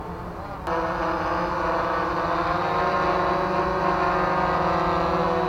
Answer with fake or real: real